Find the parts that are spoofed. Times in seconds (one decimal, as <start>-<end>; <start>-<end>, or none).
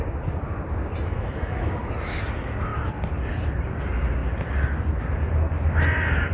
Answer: 1.1-1.9